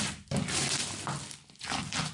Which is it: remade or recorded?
recorded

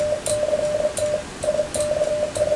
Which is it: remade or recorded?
recorded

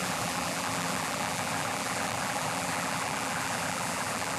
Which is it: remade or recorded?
remade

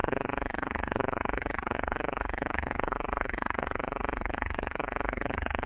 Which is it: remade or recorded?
remade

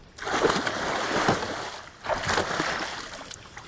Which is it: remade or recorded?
recorded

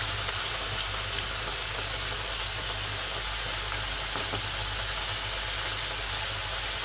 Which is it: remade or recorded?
recorded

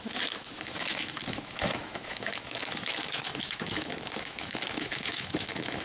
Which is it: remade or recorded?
remade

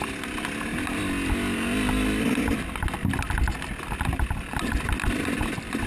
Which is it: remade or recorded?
recorded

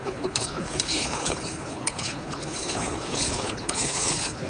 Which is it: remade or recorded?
remade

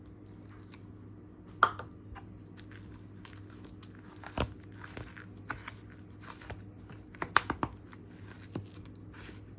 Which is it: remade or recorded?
recorded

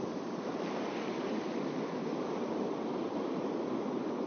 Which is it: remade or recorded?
recorded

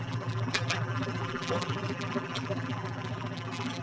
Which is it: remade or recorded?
remade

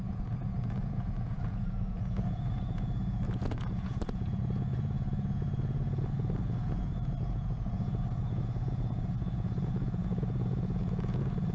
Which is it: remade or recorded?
remade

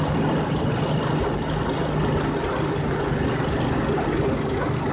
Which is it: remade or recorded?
recorded